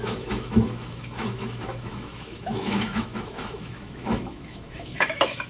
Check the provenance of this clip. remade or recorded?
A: remade